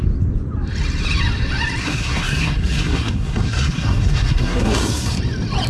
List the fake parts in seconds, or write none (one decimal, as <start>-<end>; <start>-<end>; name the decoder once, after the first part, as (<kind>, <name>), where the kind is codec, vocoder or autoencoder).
1.8-5.2 (codec, SNAC)

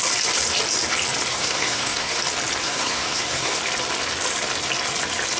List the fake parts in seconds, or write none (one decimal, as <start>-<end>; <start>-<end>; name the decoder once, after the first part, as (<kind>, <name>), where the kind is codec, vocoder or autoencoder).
1.3-2.2 (codec, SNAC); 2.6-3.6

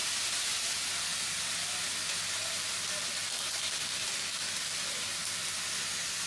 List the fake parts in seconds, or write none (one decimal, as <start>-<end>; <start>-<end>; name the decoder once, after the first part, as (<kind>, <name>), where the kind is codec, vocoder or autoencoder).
none

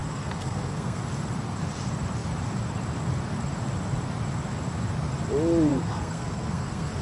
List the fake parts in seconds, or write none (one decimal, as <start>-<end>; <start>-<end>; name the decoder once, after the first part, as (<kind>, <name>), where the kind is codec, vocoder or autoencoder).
0.0-1.0 (codec, SNAC); 5.7-7.0

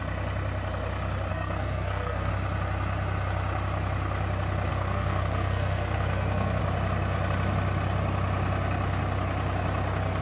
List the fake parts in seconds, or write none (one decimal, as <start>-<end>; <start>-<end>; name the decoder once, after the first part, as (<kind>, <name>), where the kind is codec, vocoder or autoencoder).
1.3-2.3 (codec, SNAC); 4.7-6.6

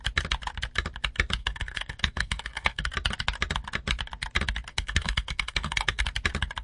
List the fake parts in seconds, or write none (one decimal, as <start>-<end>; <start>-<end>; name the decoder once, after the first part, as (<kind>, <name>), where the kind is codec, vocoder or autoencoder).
1.4-2.9 (codec, SNAC); 4.7-6.0

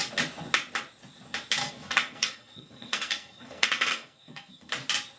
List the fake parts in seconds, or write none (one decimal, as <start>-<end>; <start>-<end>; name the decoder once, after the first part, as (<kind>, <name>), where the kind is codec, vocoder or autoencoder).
1.6-4.7 (codec, SNAC)